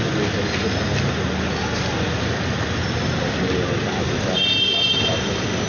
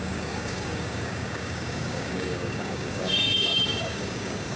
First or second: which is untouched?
first